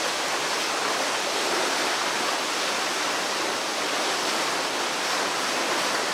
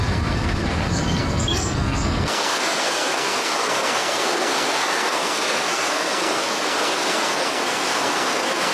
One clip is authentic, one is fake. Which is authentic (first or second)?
first